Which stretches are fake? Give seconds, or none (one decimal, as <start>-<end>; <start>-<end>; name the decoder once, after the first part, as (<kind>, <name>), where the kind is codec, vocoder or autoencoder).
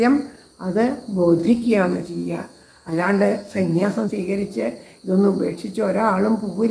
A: 1.4-4.1 (codec, SNAC)